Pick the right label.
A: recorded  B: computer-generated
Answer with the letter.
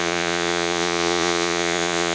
B